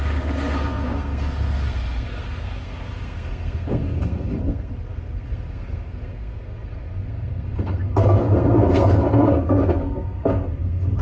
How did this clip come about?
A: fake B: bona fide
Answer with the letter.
A